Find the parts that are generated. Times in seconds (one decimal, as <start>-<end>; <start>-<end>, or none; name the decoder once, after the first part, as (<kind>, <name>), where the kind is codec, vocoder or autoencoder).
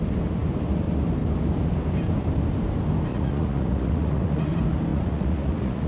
3.1-4.5 (vocoder, Vocos); 4.9-5.9